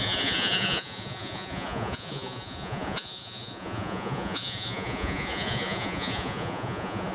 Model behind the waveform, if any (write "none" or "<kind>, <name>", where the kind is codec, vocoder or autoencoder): vocoder, Vocos